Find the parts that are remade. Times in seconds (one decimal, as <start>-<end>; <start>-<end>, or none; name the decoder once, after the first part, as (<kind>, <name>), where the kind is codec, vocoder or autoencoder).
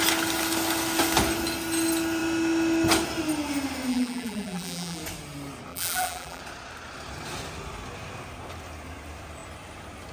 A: 3.9-5.0 (vocoder, BigVGAN v2); 5.7-6.4